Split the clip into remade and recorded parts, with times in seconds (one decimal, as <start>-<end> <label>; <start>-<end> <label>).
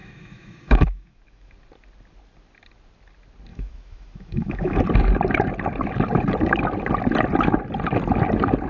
0.0-1.5 remade; 1.5-3.5 recorded; 3.5-4.8 remade; 4.8-8.7 recorded